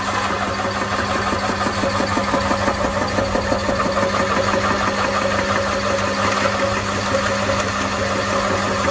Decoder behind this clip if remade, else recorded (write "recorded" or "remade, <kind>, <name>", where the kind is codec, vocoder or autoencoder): recorded